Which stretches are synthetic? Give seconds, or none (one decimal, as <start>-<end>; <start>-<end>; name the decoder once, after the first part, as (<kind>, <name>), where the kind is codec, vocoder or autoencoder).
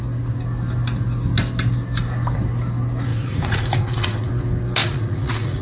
3.1-4.3 (vocoder, Vocos); 4.8-5.6